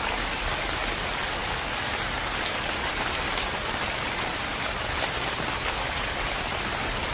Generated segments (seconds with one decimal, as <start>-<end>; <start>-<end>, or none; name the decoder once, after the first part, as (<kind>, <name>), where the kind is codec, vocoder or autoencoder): none